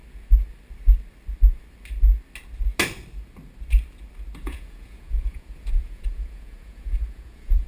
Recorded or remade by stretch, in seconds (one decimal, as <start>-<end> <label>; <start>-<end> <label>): 0.0-4.4 recorded; 4.4-7.7 remade